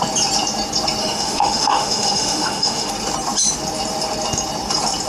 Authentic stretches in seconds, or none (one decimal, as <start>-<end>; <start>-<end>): 0.0-1.0; 2.9-5.1